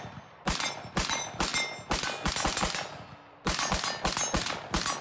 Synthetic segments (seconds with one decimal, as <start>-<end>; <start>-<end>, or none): none